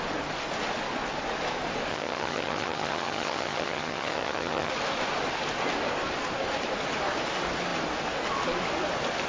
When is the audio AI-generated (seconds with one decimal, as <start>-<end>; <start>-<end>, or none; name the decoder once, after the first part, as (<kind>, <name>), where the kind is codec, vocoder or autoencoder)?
1.9-4.7 (vocoder, HiFi-GAN)